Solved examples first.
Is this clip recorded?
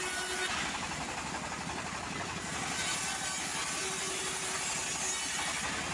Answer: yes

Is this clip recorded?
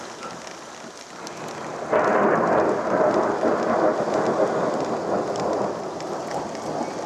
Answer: yes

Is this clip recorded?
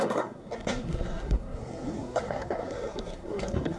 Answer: no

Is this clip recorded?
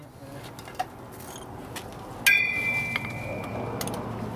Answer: yes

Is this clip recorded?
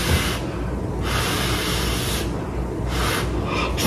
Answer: yes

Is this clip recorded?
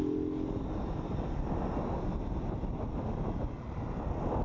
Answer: yes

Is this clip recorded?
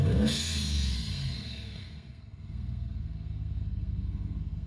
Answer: no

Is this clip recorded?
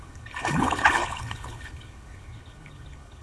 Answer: no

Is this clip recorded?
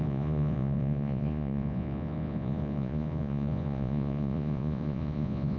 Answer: no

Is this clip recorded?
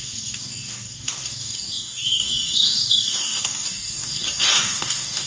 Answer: no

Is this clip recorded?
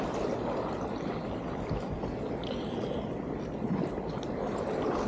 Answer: yes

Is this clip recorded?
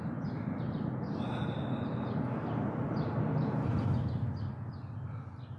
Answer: yes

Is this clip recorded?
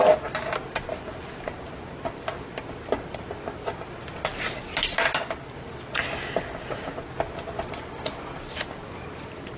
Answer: yes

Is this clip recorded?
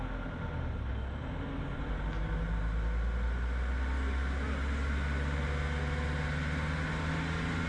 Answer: yes